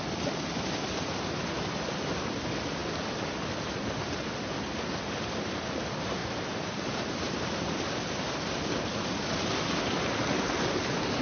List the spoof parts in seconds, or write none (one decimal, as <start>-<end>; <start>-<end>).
6.2-7.8